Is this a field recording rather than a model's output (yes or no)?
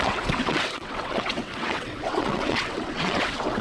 no